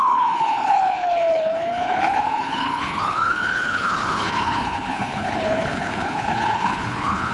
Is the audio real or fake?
fake